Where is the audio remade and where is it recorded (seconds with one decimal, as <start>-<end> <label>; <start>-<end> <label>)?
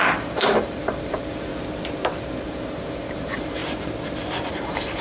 0.0-1.5 remade; 1.5-2.1 recorded; 2.1-3.6 remade; 3.6-4.5 recorded; 4.5-5.0 remade